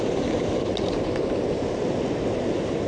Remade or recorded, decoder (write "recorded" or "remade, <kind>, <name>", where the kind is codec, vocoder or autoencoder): remade, vocoder, BigVGAN v2